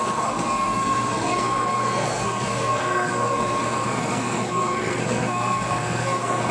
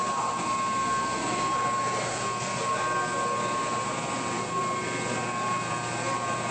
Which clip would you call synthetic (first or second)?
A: first